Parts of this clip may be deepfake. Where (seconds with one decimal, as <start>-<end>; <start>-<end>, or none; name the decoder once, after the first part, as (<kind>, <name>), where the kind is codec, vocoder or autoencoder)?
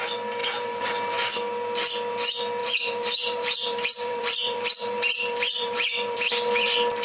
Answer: 0.4-0.9 (vocoder, BigVGAN v2); 2.6-6.3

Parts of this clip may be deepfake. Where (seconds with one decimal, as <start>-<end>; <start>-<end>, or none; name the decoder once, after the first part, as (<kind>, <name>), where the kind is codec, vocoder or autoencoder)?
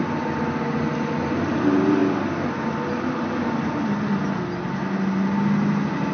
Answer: none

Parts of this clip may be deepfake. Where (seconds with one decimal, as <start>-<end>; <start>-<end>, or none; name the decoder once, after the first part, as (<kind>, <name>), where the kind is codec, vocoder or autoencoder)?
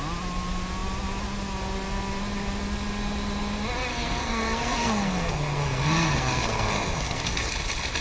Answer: 3.9-7.5 (codec, SNAC)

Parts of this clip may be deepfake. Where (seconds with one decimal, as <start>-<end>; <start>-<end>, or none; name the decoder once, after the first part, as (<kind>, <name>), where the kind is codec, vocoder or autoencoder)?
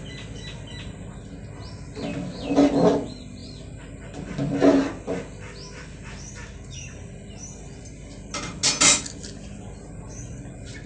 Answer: none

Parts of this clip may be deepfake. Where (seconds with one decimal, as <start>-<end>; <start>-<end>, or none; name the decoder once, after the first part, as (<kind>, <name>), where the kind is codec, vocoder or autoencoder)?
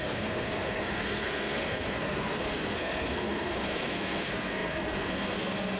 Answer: 0.0-5.8 (codec, SNAC)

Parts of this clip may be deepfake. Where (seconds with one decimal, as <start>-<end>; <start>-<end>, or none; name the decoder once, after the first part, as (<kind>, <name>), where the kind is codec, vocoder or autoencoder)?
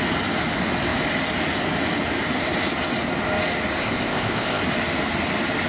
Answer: 3.8-4.6 (codec, ZipCodec)